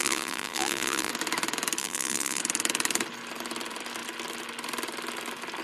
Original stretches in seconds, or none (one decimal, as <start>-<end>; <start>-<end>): 1.1-1.8; 2.4-5.6